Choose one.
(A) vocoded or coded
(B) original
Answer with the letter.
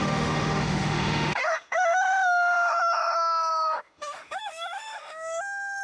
A